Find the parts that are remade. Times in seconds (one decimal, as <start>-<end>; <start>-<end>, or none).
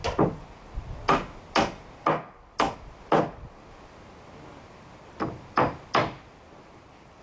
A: none